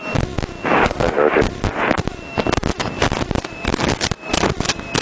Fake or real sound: real